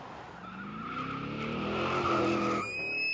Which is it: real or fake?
real